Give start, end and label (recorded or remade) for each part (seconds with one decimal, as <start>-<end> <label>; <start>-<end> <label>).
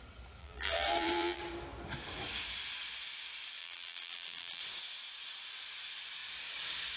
0.0-0.4 recorded; 0.4-1.4 remade; 1.4-3.6 recorded; 3.6-4.6 remade; 4.6-7.0 recorded